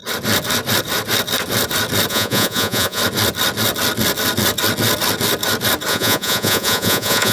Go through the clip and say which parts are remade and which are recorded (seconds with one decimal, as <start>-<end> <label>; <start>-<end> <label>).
0.0-2.1 recorded; 2.1-3.0 remade; 3.0-5.9 recorded; 5.9-7.3 remade